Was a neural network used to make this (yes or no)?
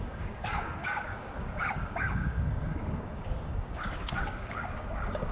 yes